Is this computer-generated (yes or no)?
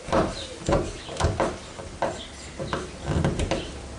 no